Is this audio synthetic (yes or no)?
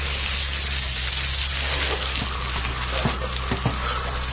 no